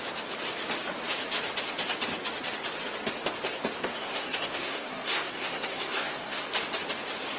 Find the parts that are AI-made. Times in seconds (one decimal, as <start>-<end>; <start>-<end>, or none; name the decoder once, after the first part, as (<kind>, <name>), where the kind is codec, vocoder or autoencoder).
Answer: 3.8-6.5 (codec, SNAC)